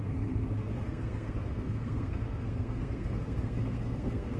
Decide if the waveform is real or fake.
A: fake